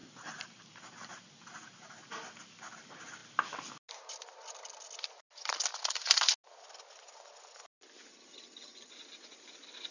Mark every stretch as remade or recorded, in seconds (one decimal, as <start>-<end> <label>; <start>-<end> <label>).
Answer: 0.0-8.1 recorded; 8.1-8.9 remade; 8.9-9.9 recorded